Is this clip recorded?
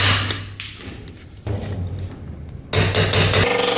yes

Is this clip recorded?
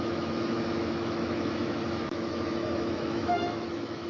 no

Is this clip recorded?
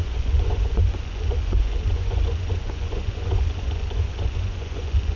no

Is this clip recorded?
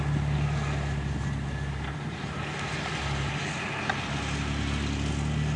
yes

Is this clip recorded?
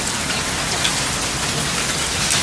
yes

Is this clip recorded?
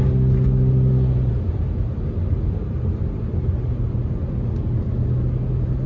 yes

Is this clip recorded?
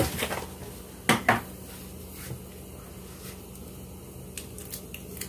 yes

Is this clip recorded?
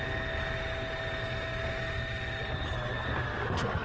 yes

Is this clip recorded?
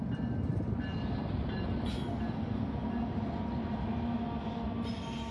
yes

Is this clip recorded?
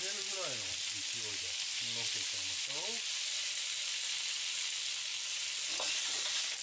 yes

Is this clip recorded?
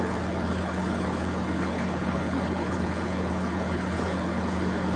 no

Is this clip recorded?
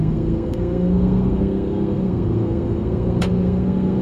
no